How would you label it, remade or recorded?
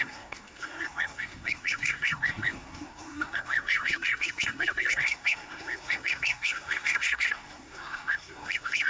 remade